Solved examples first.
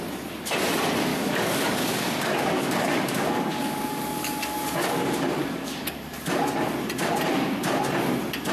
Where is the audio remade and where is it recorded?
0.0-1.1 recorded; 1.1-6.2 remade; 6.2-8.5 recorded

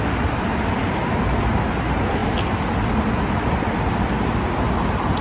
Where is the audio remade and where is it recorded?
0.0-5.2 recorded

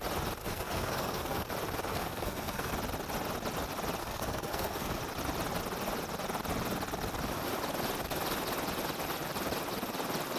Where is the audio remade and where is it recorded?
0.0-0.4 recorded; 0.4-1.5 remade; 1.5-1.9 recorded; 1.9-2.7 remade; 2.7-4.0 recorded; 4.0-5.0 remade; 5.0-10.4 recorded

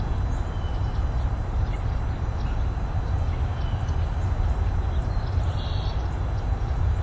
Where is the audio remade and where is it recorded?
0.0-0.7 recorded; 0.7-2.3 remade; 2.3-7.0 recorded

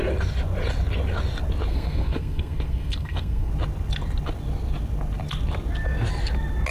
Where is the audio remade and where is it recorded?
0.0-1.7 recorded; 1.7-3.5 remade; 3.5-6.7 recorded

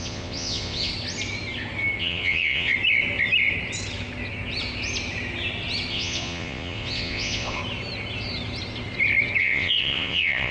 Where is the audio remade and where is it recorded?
0.0-0.9 remade; 0.9-2.0 recorded; 2.0-2.7 remade; 2.7-5.9 recorded; 5.9-7.6 remade; 7.6-9.4 recorded; 9.4-10.5 remade

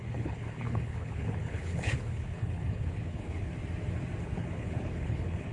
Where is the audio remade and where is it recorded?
0.0-3.5 remade; 3.5-4.2 recorded; 4.2-5.5 remade

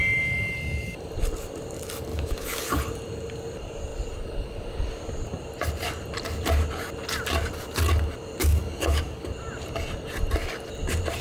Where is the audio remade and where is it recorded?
0.0-2.1 recorded; 2.1-2.8 remade; 2.8-8.4 recorded; 8.4-9.3 remade; 9.3-11.2 recorded